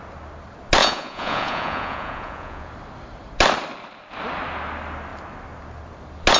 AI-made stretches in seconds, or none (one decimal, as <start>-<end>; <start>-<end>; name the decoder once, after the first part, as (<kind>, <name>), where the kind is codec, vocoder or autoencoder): 0.8-2.7 (vocoder, Vocos)